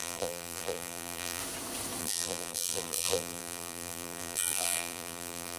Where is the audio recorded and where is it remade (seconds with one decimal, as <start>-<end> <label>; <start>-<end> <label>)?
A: 0.0-1.4 remade; 1.4-2.0 recorded; 2.0-5.6 remade